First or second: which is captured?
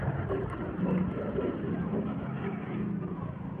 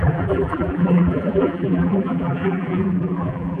first